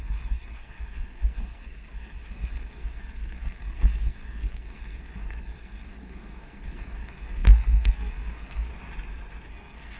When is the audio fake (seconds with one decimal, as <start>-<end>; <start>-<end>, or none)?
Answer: 0.0-8.7; 9.5-10.0